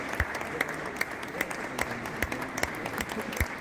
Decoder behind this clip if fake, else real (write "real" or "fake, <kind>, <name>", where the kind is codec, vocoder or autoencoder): real